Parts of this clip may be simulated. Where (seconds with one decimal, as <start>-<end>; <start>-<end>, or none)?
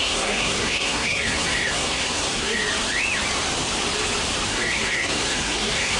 0.0-2.6; 4.5-6.0